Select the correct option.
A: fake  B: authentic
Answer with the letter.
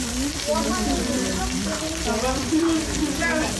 A